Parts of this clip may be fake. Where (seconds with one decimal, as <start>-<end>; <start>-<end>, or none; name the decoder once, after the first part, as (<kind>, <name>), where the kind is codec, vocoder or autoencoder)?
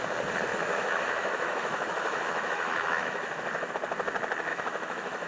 0.5-3.7 (autoencoder, DAC-VAE); 4.5-5.3